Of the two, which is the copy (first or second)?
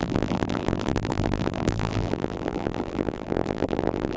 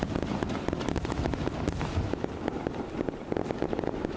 first